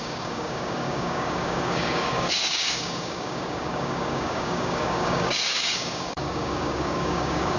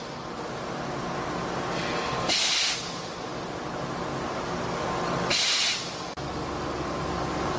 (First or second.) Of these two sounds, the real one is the second